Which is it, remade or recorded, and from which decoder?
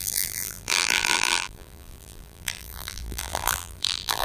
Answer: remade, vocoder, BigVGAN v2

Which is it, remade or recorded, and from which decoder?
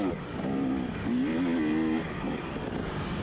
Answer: recorded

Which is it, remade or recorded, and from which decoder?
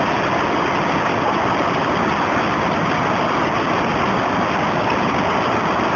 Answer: recorded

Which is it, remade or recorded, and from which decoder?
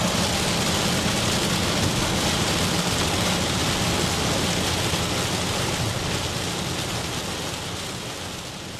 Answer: recorded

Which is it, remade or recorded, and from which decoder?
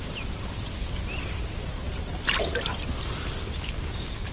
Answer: recorded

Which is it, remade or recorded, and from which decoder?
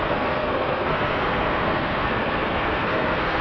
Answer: remade, codec, SNAC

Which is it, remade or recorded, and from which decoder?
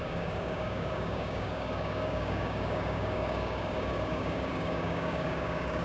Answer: remade, codec, DAC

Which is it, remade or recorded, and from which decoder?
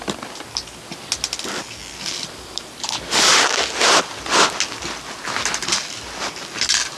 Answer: recorded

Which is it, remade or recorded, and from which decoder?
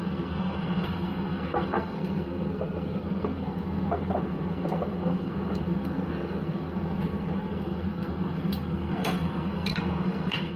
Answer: remade, codec, SNAC